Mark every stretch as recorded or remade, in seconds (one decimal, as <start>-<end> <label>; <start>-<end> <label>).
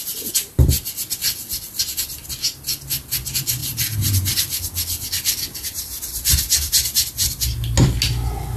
0.0-8.6 recorded